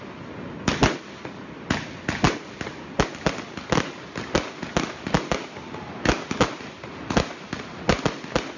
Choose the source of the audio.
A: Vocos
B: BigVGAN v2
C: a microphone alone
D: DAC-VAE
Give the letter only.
C